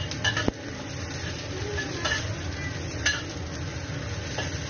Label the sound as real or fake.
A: real